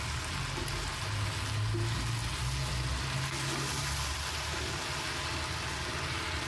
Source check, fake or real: real